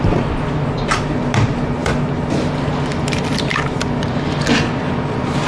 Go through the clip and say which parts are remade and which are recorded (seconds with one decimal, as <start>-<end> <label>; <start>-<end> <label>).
0.0-5.5 recorded